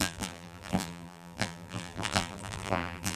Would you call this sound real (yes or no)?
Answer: no